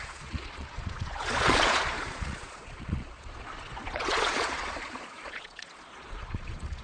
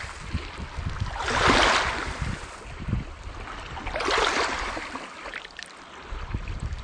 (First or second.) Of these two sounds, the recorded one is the second